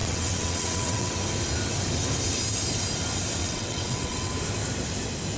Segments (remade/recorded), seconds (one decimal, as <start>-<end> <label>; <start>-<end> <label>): 0.0-1.2 remade; 1.2-3.4 recorded; 3.4-4.3 remade; 4.3-5.4 recorded